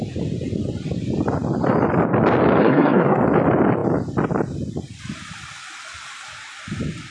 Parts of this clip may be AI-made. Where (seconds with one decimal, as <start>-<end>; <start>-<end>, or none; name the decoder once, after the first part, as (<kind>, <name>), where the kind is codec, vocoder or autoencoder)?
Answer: 2.6-3.2 (codec, SNAC)